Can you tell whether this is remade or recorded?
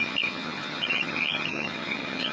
remade